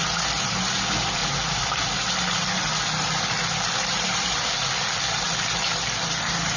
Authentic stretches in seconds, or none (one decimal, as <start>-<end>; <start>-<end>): 0.0-6.6